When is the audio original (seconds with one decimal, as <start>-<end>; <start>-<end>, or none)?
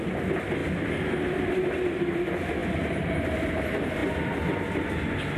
0.0-5.4